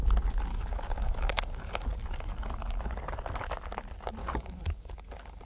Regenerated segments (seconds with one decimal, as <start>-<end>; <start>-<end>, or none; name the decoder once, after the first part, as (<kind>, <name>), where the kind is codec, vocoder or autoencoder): 0.5-2.9 (codec, DAC); 4.2-5.1